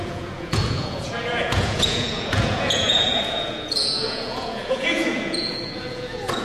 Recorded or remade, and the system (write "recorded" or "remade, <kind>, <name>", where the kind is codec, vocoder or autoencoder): remade, vocoder, Vocos